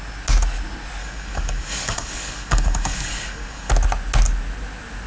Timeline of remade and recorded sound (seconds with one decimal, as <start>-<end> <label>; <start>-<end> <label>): 0.0-1.0 recorded; 1.0-3.7 remade; 3.7-5.1 recorded